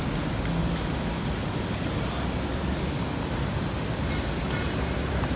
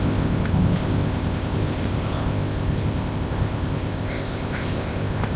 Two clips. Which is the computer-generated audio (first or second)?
second